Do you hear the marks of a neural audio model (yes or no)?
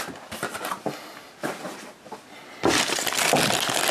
no